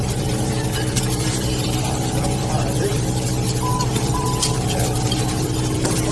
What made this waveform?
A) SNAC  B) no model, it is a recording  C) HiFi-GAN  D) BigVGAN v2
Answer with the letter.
D